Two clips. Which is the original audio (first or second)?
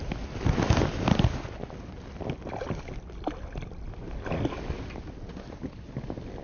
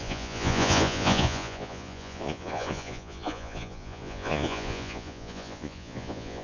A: first